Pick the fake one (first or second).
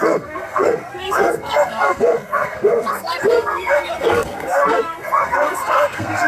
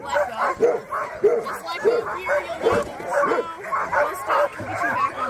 first